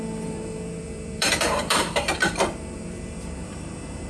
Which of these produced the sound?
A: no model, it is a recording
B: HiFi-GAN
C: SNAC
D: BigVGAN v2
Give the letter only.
D